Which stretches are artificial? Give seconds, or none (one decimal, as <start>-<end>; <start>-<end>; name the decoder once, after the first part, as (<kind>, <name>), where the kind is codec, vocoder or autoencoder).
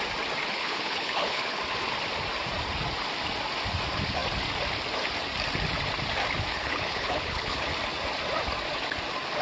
0.5-1.6 (codec, HILCodec); 6.5-7.6